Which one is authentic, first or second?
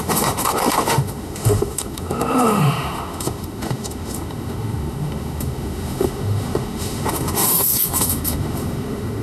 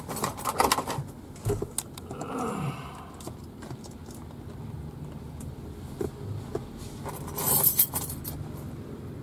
second